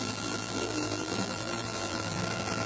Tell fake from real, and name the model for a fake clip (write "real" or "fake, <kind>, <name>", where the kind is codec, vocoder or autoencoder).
fake, vocoder, BigVGAN v2